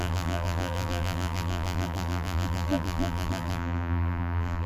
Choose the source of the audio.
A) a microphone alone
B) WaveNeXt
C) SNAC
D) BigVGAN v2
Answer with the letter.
D